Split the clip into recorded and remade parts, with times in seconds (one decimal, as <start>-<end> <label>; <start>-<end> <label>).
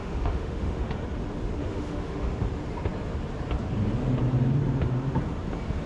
0.0-0.9 remade; 0.9-1.6 recorded; 1.6-2.4 remade; 2.4-5.9 recorded